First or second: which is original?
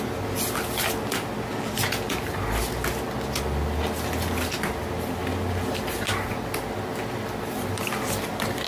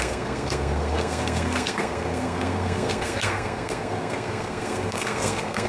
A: first